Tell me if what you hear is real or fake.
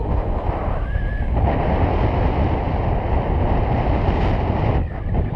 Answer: real